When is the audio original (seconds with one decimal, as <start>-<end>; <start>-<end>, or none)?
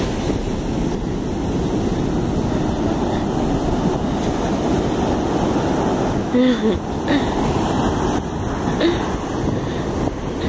0.0-6.2; 6.8-10.5